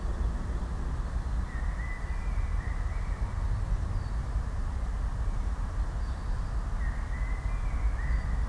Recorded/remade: recorded